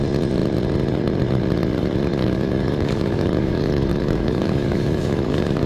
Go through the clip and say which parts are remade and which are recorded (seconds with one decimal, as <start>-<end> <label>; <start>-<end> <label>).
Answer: 0.0-2.2 recorded; 2.2-5.7 remade